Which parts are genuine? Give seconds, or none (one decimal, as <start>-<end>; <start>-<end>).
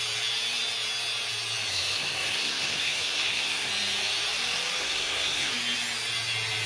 0.0-1.7; 3.7-4.8; 5.5-6.7